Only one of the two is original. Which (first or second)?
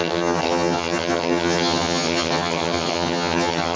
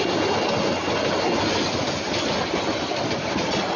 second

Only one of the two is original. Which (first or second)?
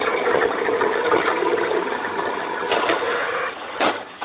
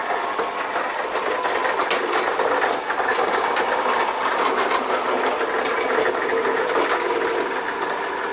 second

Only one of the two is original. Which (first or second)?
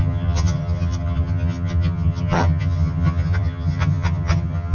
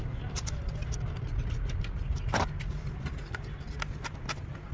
second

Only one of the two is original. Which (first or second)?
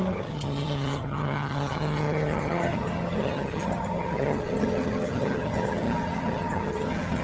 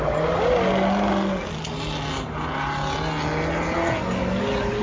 second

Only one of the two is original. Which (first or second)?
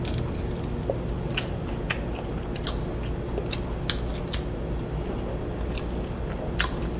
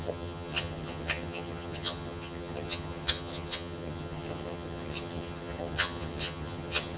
first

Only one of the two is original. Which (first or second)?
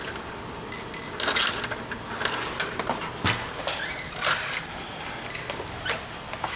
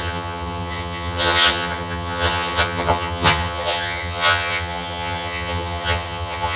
first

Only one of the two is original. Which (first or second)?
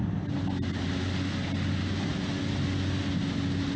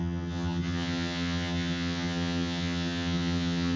first